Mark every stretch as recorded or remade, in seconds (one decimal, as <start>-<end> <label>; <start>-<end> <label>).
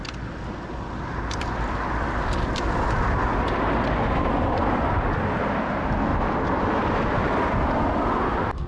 0.0-1.1 recorded; 1.1-6.1 remade; 6.1-6.8 recorded; 6.8-8.7 remade